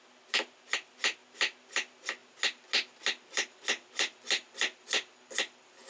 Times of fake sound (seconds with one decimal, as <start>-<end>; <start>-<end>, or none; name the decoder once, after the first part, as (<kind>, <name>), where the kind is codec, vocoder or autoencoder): none